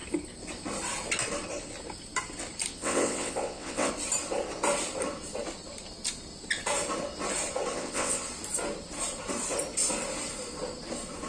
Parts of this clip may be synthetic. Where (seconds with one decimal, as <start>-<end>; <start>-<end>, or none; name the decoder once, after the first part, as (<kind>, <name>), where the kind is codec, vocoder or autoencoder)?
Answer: 2.7-3.9 (vocoder, WaveNeXt); 7.7-8.3